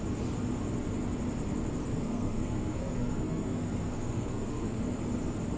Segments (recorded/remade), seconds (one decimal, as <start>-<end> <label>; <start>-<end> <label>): 0.0-1.8 recorded; 1.8-4.8 remade; 4.8-5.6 recorded